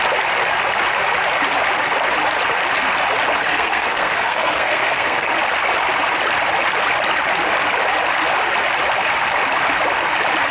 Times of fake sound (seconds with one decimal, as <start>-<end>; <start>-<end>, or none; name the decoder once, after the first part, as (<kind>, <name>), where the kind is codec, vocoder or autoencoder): 3.5-5.3 (codec, SNAC)